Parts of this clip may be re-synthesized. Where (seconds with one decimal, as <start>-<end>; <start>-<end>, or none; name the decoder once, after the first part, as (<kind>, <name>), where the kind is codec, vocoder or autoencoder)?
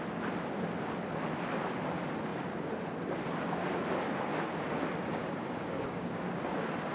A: 5.2-6.4 (codec, DAC)